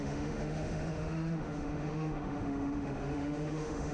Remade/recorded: remade